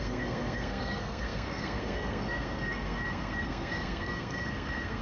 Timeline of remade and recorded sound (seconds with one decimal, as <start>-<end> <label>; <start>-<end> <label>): 0.0-5.0 remade